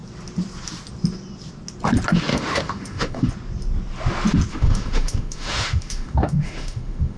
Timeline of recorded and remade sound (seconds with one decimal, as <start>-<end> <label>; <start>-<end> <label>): 0.0-2.3 recorded; 2.3-3.3 remade; 3.3-4.5 recorded; 4.5-7.2 remade

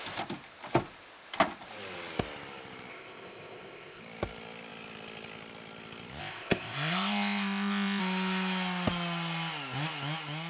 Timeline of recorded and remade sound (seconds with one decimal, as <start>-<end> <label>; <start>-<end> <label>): 0.0-2.9 recorded; 2.9-4.0 remade; 4.0-6.2 recorded; 6.2-8.0 remade; 8.0-10.5 recorded

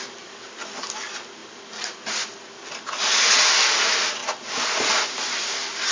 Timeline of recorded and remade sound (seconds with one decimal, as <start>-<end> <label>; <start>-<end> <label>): 0.0-5.9 recorded

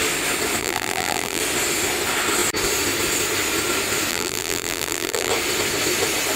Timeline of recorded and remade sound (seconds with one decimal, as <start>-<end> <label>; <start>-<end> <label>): 0.0-0.6 recorded; 0.6-1.4 remade; 1.4-4.1 recorded; 4.1-5.3 remade; 5.3-6.4 recorded